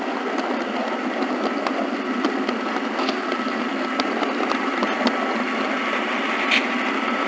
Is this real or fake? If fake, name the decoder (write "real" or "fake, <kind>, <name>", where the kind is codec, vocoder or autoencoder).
real